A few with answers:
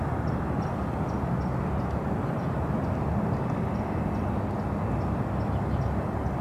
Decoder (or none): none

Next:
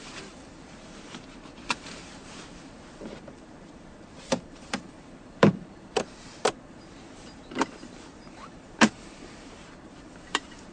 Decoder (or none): vocoder, BigVGAN v2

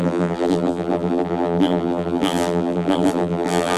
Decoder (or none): vocoder, BigVGAN v2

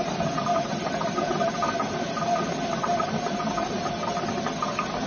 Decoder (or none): none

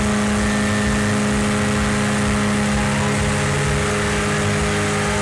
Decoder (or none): none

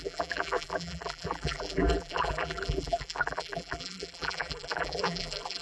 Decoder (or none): vocoder, BigVGAN v2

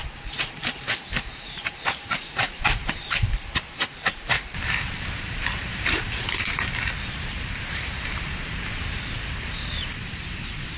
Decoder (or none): vocoder, BigVGAN v2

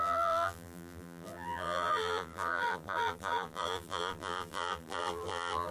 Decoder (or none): vocoder, BigVGAN v2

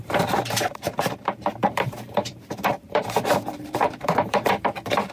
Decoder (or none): vocoder, BigVGAN v2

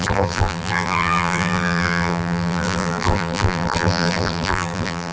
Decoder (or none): vocoder, BigVGAN v2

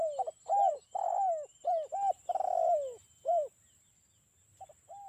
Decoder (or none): none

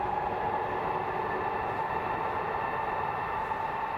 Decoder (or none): none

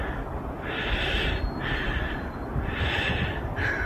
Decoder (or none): none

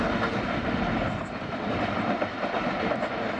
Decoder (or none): none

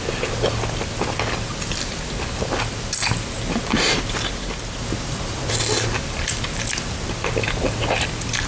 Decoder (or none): none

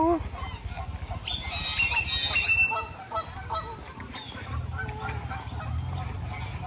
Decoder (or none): none